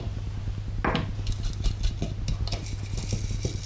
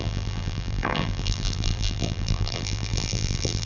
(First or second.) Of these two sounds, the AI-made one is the second